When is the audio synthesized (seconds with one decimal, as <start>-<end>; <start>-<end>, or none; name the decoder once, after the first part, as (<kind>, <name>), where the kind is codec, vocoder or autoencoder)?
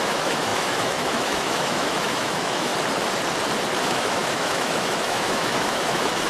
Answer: 0.0-2.7 (autoencoder, DAC-VAE); 3.8-6.3